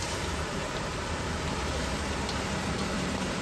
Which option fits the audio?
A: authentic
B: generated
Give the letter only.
B